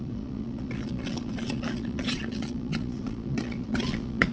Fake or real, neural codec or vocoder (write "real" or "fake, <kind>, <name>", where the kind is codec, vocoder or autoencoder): fake, vocoder, Vocos